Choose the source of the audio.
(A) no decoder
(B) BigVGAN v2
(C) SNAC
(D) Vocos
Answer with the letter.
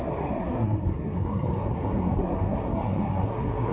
C